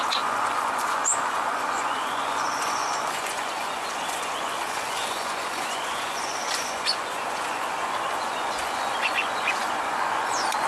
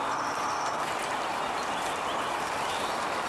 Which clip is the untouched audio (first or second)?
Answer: second